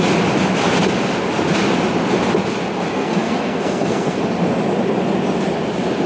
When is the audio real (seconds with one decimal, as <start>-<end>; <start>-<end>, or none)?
0.0-2.9; 4.2-6.1